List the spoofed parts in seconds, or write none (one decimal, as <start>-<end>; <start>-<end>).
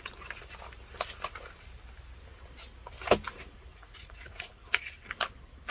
3.7-4.8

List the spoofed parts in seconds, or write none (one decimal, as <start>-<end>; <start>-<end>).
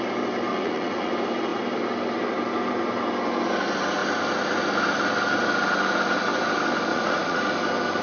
0.5-1.1; 6.9-7.5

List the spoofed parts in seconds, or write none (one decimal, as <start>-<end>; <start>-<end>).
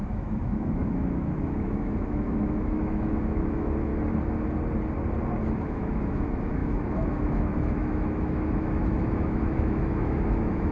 0.0-3.9; 5.6-10.7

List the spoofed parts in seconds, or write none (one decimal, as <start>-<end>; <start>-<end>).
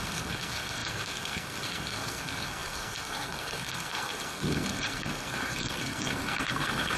0.0-7.0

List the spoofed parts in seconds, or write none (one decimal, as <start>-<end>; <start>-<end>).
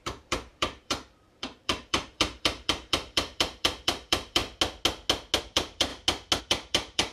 0.0-4.4; 5.4-5.9; 6.4-7.1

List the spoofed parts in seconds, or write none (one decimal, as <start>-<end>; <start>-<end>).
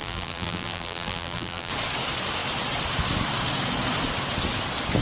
0.0-1.7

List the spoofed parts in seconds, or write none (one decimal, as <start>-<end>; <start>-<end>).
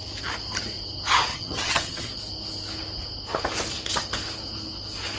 1.3-2.1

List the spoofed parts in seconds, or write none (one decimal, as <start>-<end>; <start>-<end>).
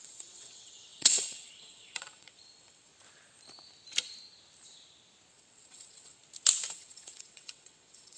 0.0-2.9; 5.3-6.2; 6.7-8.2